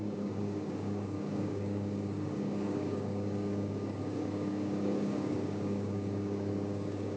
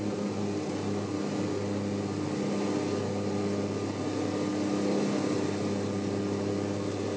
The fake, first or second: first